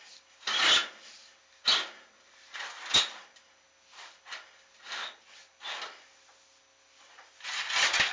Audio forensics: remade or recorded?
recorded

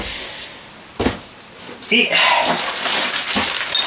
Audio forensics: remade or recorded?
recorded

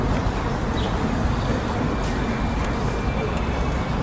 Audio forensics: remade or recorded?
recorded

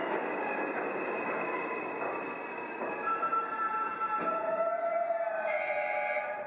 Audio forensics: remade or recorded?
recorded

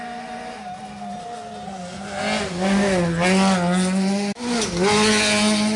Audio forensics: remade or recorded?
recorded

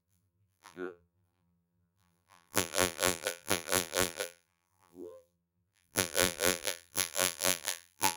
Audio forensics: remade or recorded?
remade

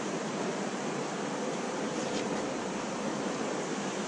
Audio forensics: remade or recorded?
recorded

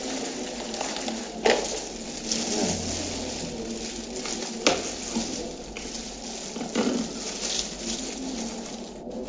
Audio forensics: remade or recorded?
recorded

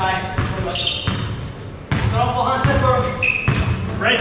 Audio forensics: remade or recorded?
recorded